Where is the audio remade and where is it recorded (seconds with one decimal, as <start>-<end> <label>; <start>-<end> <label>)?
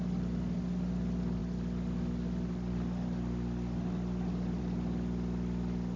0.0-6.0 recorded